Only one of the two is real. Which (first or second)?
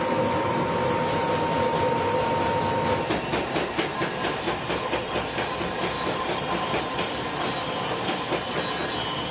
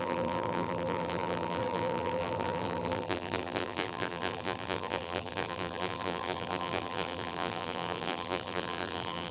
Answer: first